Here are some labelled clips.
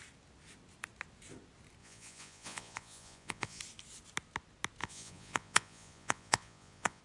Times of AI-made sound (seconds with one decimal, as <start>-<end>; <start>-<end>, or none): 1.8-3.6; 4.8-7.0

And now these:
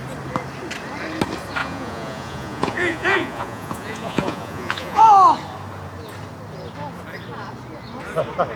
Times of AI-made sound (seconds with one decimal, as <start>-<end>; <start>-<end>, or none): 1.6-5.0

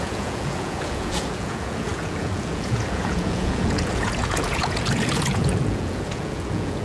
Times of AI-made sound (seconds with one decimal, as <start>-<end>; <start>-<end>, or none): 0.0-6.8

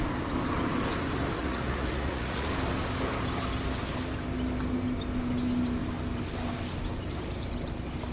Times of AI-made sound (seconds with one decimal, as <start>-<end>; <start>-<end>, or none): 1.4-2.5

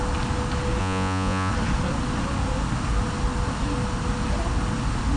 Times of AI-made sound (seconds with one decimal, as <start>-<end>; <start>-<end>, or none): 0.8-1.5